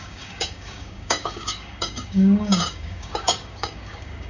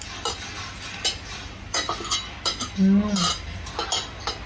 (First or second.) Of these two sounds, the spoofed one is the first